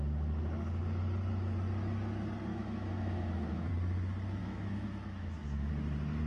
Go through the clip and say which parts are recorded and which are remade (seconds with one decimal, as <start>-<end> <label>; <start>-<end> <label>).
0.0-2.5 recorded; 2.5-3.7 remade; 3.7-4.4 recorded; 4.4-5.7 remade; 5.7-6.3 recorded